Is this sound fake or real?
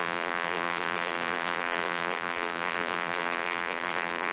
fake